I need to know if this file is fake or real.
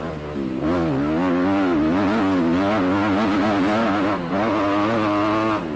real